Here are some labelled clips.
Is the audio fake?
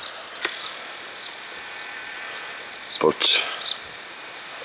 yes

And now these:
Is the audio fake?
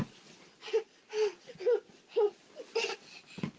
no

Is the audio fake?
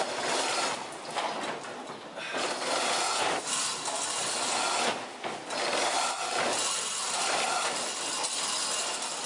no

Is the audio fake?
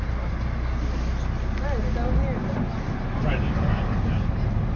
no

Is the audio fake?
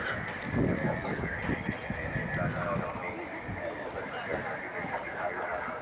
no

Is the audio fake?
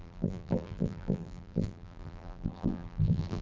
yes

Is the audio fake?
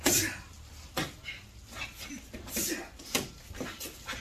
no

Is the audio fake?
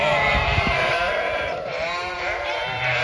yes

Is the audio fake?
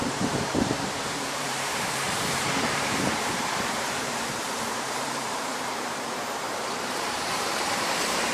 yes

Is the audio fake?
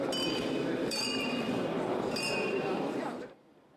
yes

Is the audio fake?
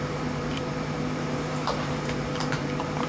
yes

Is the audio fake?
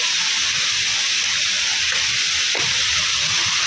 no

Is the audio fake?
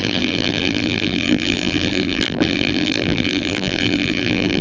yes